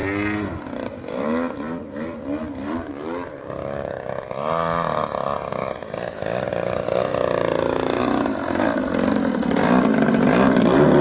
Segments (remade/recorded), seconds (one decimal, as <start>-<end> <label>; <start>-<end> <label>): 0.0-11.0 recorded